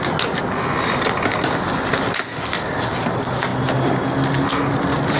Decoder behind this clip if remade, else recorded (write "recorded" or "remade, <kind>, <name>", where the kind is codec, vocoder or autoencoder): recorded